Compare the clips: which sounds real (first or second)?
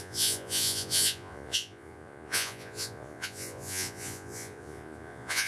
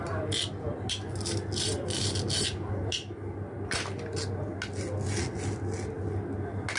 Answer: second